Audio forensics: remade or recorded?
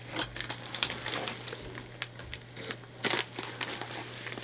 recorded